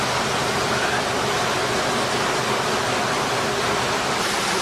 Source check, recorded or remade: recorded